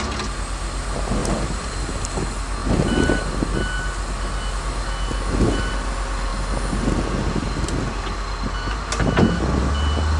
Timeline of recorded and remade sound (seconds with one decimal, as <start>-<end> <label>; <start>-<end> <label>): 0.0-1.2 recorded; 1.2-2.0 remade; 2.0-10.2 recorded